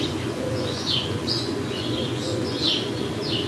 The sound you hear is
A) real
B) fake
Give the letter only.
B